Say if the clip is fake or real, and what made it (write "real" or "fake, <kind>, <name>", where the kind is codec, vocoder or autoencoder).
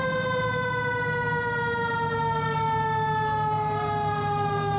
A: real